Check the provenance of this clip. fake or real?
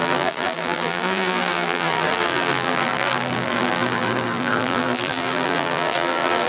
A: fake